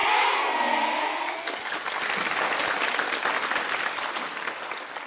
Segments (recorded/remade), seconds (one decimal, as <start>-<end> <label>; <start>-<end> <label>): 0.0-5.1 recorded